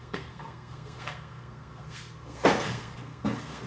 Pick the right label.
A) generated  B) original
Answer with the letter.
A